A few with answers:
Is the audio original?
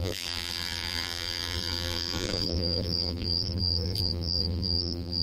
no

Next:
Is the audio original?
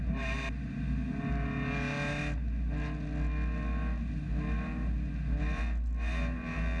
yes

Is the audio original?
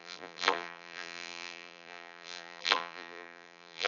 no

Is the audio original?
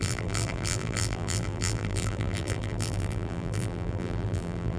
no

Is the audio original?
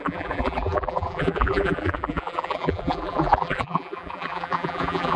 no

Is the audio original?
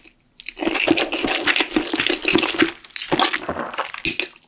yes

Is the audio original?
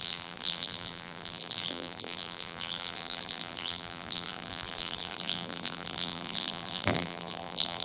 no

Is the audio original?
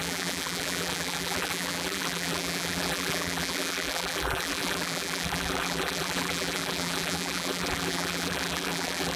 no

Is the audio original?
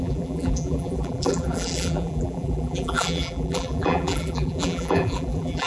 no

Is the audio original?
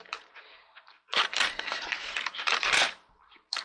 no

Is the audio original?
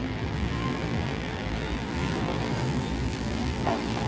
no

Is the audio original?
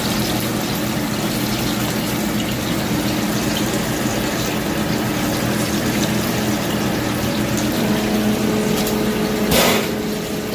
yes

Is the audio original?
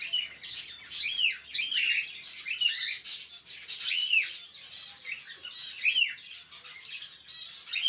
yes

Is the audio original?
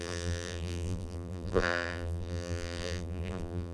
no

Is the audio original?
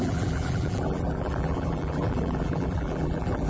no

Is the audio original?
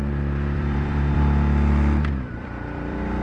no